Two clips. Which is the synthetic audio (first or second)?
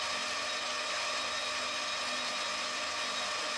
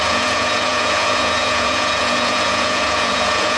second